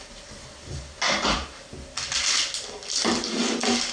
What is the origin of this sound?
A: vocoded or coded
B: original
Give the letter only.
B